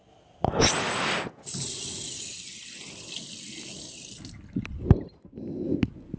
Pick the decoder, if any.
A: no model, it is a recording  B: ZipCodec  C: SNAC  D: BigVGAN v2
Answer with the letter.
A